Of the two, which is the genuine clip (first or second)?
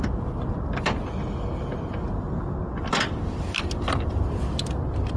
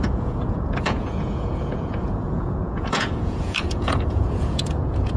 first